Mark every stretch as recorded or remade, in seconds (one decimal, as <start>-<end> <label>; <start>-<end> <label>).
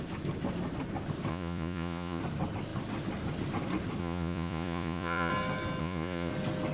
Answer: 0.0-1.3 recorded; 1.3-2.2 remade; 2.2-4.0 recorded; 4.0-5.3 remade; 5.3-5.8 recorded; 5.8-6.3 remade; 6.3-6.7 recorded